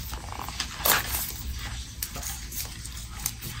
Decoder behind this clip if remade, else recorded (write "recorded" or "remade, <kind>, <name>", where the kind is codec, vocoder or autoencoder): recorded